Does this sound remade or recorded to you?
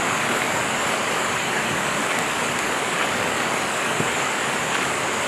remade